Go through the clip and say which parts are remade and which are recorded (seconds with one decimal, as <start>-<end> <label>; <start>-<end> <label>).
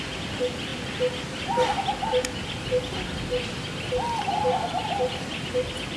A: 0.0-6.0 recorded